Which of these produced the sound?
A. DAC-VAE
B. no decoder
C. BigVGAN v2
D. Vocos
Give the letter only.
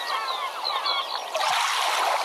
B